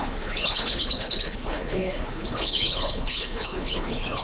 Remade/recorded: remade